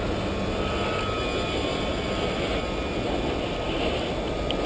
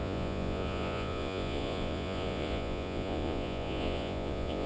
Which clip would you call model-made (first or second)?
second